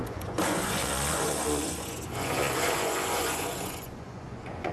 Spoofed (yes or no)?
yes